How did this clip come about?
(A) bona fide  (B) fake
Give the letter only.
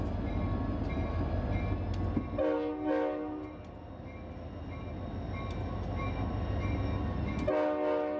A